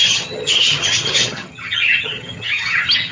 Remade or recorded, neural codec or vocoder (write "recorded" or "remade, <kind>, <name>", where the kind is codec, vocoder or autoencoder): remade, vocoder, HiFi-GAN